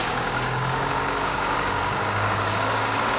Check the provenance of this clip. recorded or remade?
remade